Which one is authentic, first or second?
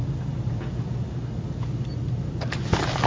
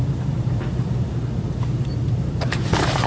first